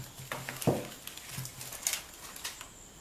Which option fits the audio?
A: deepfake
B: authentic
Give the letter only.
B